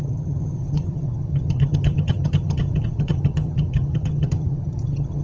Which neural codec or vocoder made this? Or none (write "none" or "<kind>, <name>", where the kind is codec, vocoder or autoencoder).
vocoder, HiFi-GAN